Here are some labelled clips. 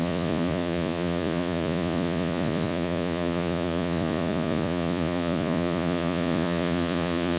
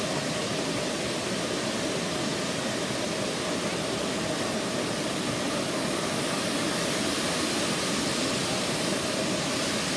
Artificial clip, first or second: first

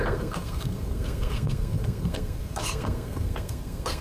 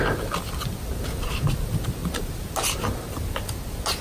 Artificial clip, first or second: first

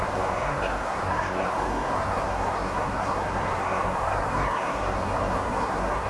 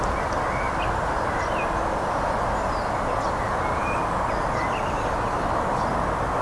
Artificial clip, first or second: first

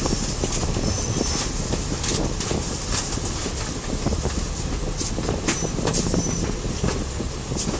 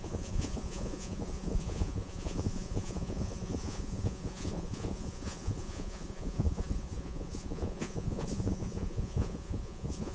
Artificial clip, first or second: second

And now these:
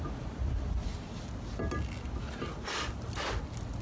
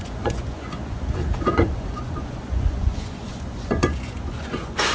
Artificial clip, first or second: second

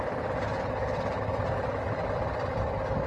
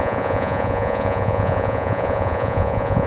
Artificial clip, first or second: second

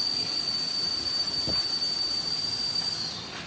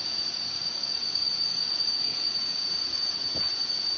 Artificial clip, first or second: second